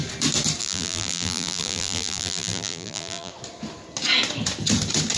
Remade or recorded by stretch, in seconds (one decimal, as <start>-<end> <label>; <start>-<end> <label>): 0.0-0.6 recorded; 0.6-3.3 remade; 3.3-5.2 recorded